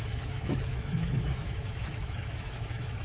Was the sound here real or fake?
fake